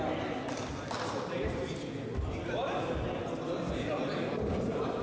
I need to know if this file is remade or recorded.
recorded